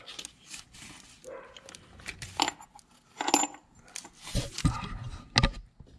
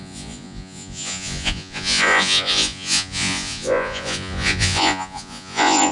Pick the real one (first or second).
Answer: first